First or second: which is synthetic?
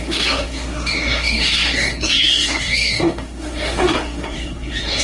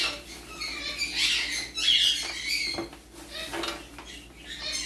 first